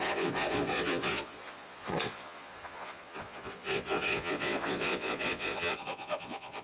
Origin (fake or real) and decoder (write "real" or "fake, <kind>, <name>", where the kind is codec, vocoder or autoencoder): fake, vocoder, Vocos